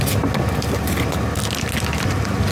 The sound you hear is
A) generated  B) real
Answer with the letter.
B